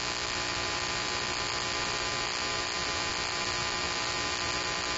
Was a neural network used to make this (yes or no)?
no